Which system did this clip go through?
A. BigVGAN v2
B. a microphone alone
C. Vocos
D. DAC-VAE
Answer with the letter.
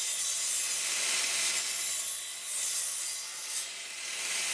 B